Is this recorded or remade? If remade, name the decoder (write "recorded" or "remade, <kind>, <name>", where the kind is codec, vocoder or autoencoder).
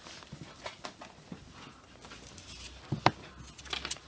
recorded